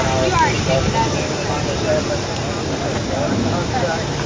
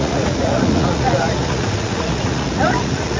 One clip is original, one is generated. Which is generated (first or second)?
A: second